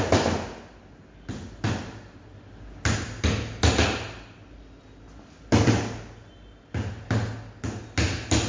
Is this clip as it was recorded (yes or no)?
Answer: yes